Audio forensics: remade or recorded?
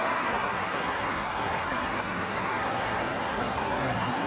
remade